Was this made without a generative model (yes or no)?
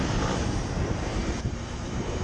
no